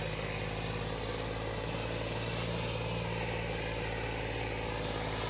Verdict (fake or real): real